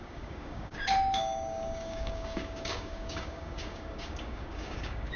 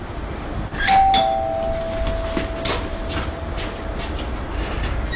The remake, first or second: first